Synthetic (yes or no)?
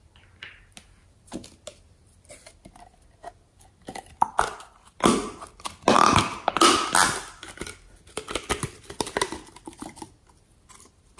no